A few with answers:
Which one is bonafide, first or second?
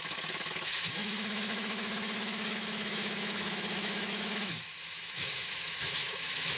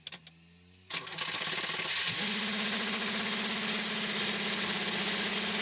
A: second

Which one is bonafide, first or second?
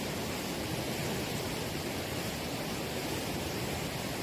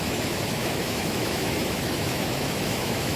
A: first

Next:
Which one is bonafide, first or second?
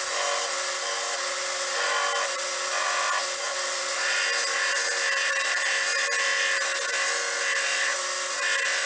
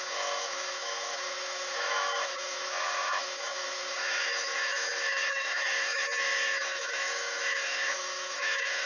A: first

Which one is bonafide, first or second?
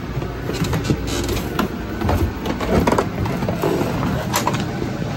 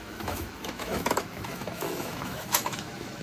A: first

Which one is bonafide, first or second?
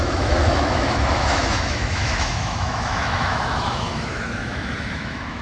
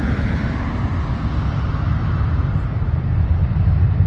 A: second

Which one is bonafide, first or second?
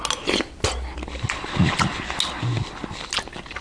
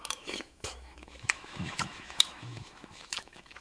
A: first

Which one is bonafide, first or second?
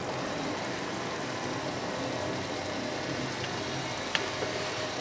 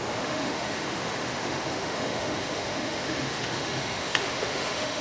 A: first